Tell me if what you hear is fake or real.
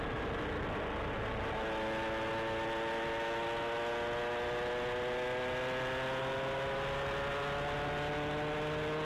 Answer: real